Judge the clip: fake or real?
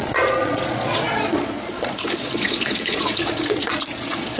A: fake